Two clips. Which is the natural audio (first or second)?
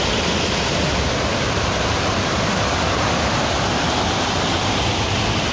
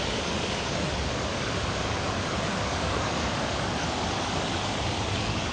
first